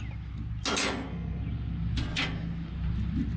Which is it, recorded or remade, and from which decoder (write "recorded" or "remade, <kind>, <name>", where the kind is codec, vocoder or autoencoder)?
recorded